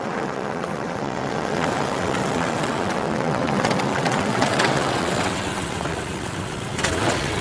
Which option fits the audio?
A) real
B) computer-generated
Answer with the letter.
B